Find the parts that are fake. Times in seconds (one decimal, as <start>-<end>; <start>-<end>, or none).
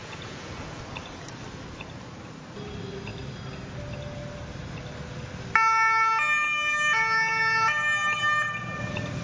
0.0-0.8